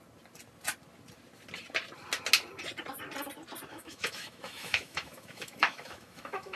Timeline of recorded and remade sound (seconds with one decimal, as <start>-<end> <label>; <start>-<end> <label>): 0.0-3.7 recorded; 3.7-6.6 remade